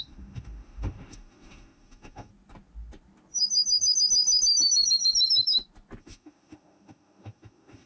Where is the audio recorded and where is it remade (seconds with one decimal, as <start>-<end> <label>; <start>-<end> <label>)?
0.0-2.3 remade; 2.3-6.0 recorded; 6.0-7.9 remade